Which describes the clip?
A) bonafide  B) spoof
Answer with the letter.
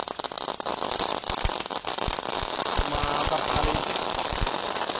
A